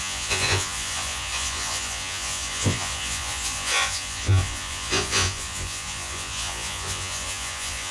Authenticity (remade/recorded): remade